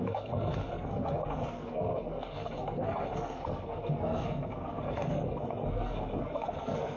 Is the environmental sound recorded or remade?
remade